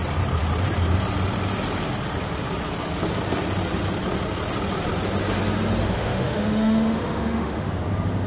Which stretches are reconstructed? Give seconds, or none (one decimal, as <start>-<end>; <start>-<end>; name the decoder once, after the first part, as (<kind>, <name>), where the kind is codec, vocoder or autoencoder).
5.8-7.7 (autoencoder, DAC-VAE)